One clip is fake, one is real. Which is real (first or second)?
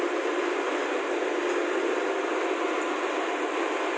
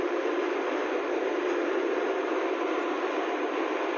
first